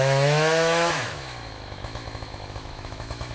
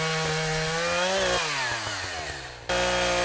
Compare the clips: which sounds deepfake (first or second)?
first